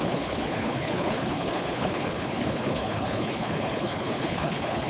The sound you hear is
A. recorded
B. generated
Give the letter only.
B